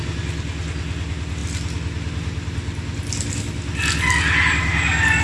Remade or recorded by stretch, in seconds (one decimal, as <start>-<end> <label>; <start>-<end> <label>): 0.0-5.2 recorded